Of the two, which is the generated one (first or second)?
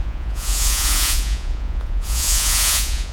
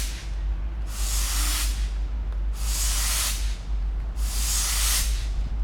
first